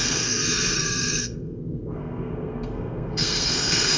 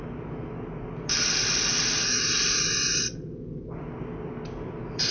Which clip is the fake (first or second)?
first